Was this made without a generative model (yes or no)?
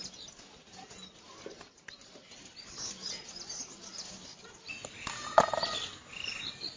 yes